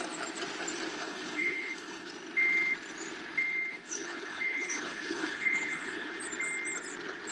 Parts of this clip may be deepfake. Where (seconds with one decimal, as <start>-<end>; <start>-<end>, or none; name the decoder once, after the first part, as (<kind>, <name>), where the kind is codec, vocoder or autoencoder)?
1.0-2.1 (codec, HILCodec); 3.7-6.2